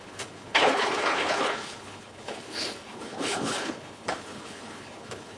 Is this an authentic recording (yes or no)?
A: no